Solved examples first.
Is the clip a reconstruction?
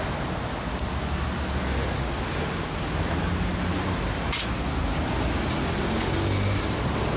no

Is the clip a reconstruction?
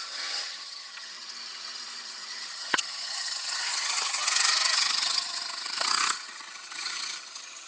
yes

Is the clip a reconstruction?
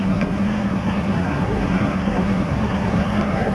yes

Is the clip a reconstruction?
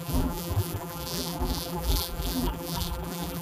yes